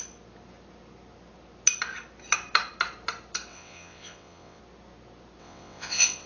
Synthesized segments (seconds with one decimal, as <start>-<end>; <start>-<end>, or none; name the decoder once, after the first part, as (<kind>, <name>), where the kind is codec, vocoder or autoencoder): 3.5-4.6 (vocoder, WaveNeXt); 5.4-6.3